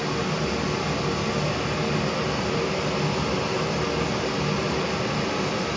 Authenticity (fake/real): real